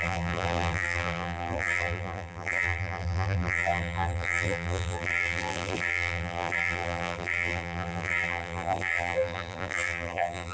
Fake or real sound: fake